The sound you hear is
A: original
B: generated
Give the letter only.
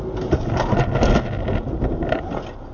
A